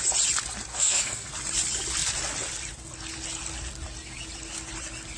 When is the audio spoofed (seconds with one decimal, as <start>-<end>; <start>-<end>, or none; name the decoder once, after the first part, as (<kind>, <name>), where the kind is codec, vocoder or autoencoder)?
0.7-1.3 (codec, SNAC)